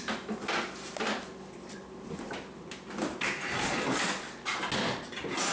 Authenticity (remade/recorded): recorded